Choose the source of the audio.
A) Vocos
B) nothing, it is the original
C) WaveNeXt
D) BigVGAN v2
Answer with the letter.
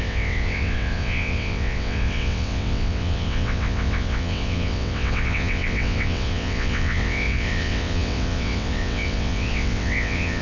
C